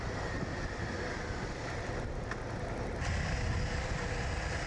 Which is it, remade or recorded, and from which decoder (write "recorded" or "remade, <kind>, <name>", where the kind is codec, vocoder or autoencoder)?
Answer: recorded